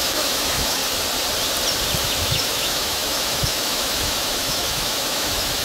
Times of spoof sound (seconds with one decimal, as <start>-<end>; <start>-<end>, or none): 0.0-0.8; 2.0-5.6